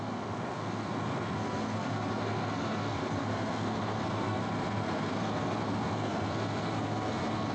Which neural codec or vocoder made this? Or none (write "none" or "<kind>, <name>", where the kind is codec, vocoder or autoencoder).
codec, SNAC